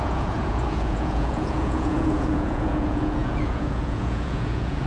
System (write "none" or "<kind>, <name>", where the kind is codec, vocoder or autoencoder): vocoder, Vocos